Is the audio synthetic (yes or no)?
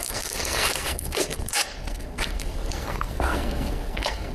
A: yes